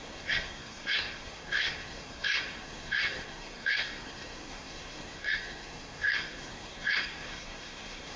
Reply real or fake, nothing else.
fake